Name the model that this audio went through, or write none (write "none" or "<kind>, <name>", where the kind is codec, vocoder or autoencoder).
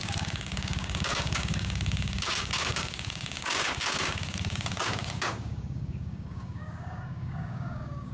codec, DAC